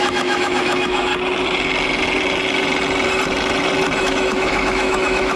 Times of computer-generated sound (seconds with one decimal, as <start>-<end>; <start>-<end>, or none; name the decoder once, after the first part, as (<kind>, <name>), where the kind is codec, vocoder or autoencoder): 0.0-1.1 (autoencoder, DAC-VAE); 4.0-5.4